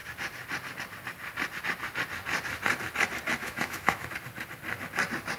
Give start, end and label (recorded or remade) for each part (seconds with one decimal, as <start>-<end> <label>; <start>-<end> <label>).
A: 0.0-3.4 recorded; 3.4-4.1 remade; 4.1-5.4 recorded